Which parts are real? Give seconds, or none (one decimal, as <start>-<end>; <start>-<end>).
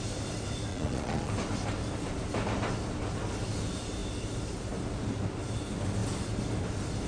0.0-0.7; 1.3-7.1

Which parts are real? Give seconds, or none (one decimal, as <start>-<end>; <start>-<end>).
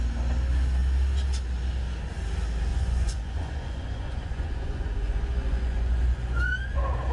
0.0-2.7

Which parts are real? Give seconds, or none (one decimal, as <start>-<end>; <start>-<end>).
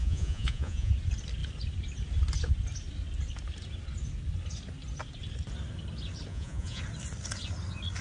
0.9-6.3; 6.8-8.0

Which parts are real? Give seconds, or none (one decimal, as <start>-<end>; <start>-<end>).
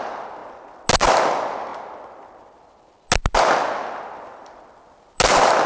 0.0-5.7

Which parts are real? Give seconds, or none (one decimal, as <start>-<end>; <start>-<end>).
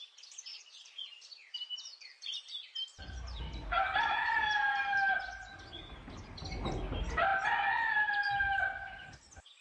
0.0-0.5; 5.2-9.6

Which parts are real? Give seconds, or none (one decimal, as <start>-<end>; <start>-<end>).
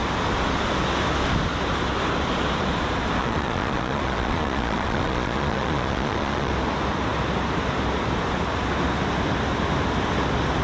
0.0-3.2; 6.5-10.6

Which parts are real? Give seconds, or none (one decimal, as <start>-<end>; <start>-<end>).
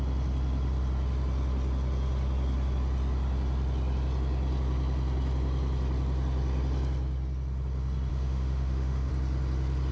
0.0-8.1; 9.1-9.9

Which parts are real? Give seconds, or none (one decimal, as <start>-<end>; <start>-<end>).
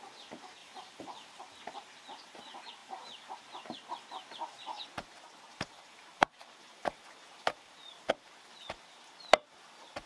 0.0-0.6; 1.4-2.8; 3.4-5.5; 8.1-10.1